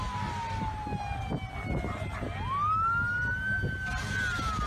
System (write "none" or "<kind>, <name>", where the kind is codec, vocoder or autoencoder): none